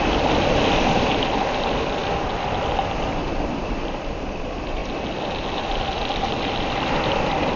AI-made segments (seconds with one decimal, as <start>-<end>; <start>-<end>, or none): none